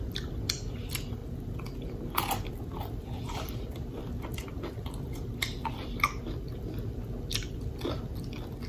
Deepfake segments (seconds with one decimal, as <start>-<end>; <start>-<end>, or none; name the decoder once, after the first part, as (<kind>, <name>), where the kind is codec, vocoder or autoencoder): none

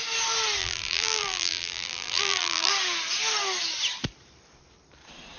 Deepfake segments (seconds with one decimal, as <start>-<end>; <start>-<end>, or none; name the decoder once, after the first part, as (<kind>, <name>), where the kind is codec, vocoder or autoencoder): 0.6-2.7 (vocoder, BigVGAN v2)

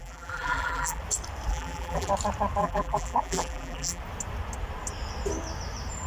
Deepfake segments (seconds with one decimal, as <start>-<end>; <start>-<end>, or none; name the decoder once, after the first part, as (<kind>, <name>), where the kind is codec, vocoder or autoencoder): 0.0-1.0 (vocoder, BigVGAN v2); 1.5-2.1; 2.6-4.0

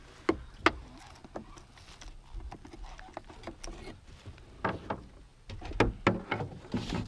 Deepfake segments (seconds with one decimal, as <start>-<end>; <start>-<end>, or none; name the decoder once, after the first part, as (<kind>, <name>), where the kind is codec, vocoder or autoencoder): none

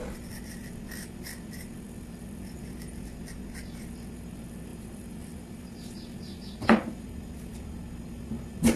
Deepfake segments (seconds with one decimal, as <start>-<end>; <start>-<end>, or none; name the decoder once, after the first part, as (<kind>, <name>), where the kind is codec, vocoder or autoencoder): 4.7-5.6 (vocoder, BigVGAN v2)